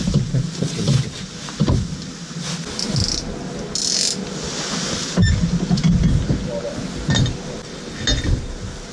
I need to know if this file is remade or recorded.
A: recorded